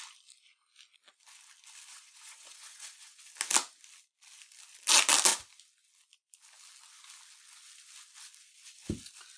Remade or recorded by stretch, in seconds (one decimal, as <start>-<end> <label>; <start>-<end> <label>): 0.0-1.9 recorded; 1.9-3.2 remade; 3.2-9.4 recorded